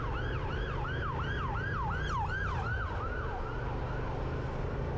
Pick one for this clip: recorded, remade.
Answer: recorded